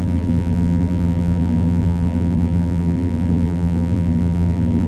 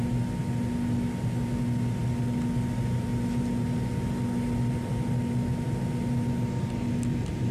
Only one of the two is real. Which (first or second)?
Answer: second